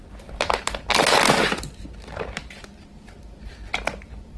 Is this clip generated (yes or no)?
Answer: no